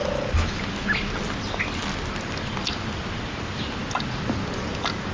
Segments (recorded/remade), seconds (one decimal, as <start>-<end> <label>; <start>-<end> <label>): 0.0-0.6 remade; 0.6-5.1 recorded